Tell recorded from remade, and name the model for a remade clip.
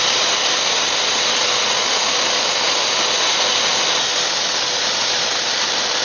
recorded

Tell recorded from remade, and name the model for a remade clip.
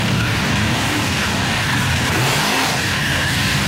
remade, codec, DAC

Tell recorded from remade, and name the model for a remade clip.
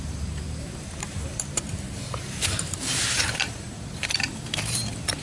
remade, vocoder, BigVGAN v2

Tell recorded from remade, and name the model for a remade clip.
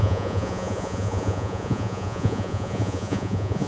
remade, vocoder, Vocos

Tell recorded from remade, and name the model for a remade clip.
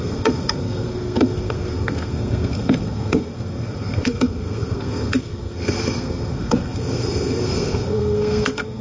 remade, codec, SNAC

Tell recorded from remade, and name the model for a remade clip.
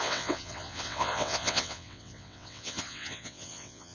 remade, vocoder, WaveNeXt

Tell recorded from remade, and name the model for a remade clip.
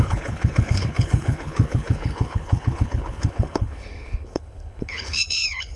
remade, codec, HILCodec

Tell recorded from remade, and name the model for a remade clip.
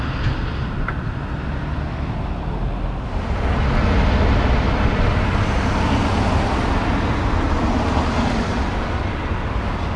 recorded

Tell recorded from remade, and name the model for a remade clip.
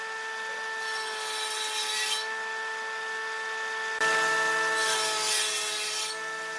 recorded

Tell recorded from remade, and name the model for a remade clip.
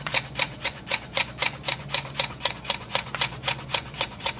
remade, vocoder, Vocos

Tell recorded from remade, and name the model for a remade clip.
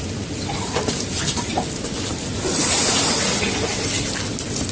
recorded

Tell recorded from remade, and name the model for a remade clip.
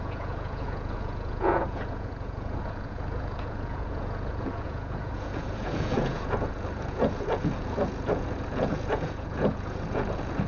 remade, vocoder, Vocos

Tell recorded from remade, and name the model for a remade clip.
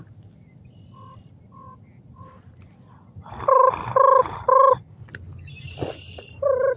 recorded